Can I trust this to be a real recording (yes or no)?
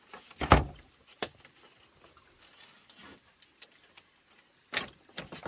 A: yes